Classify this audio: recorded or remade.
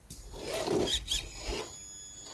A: recorded